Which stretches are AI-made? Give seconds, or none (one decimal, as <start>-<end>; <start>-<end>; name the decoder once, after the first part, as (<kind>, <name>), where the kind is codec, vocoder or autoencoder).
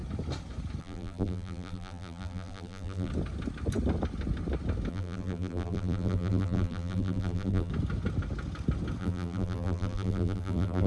0.8-3.1 (vocoder, BigVGAN v2); 4.9-7.7; 9.0-10.9